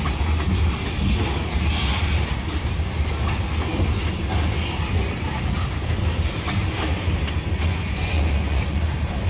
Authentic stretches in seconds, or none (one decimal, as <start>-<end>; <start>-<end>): 0.0-7.6; 8.8-9.3